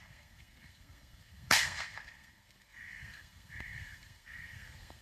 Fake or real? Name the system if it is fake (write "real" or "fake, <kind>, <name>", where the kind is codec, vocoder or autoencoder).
fake, codec, SNAC